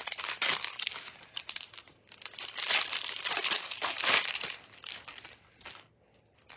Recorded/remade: recorded